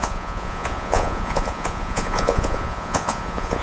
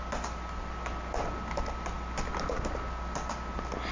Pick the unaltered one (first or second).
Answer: second